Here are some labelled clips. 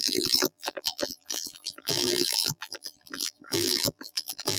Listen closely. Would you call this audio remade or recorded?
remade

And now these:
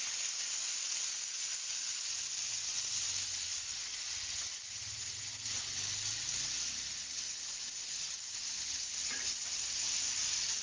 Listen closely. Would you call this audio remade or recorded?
recorded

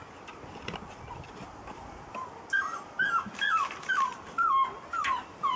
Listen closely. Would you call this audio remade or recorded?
remade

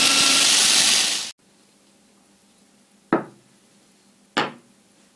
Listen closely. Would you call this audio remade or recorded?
recorded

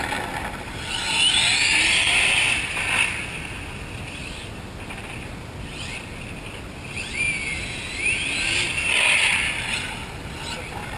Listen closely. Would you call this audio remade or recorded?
recorded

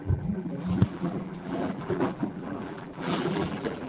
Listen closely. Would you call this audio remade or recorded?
remade